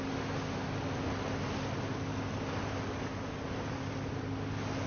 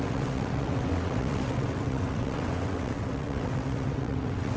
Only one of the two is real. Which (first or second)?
first